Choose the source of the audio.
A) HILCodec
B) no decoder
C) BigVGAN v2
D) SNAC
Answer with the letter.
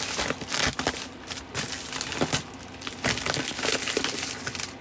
B